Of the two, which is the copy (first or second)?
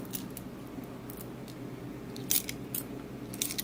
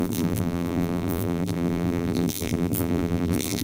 second